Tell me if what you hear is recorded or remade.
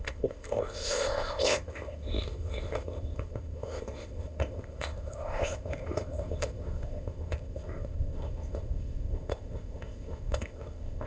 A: remade